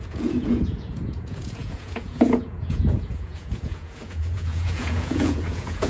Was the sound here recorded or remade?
remade